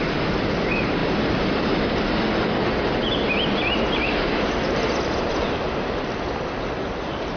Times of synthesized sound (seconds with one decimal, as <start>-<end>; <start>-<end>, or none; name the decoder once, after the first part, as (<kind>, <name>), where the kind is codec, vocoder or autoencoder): none